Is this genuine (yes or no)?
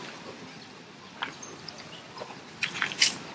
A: no